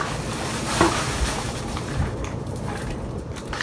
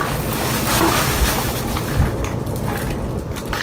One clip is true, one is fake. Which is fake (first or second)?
first